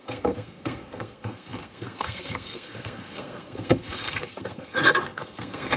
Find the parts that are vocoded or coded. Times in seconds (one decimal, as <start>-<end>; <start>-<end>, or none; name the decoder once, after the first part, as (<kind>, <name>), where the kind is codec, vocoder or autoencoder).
0.0-5.8 (codec, SNAC)